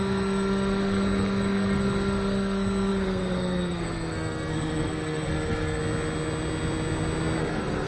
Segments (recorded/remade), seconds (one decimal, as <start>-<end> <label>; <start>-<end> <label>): 0.0-5.8 remade; 5.8-7.4 recorded; 7.4-7.9 remade